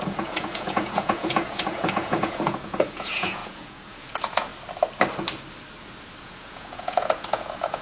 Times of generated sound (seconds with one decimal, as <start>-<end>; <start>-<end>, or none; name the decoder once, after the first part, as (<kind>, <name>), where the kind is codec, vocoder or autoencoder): 0.0-4.5 (vocoder, Vocos); 6.2-7.8